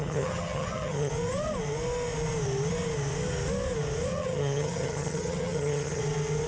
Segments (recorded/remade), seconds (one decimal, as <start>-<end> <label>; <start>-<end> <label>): 0.0-1.1 remade; 1.1-4.1 recorded; 4.1-6.0 remade; 6.0-6.5 recorded